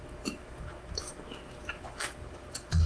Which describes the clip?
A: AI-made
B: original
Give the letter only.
A